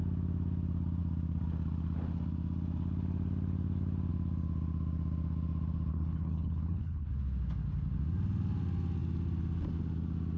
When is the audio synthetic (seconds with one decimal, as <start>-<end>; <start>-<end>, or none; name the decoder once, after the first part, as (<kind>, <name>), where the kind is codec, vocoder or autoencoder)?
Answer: 5.9-7.1 (codec, HILCodec)